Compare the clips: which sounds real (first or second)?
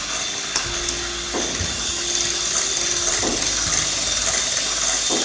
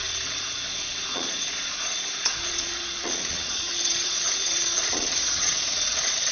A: first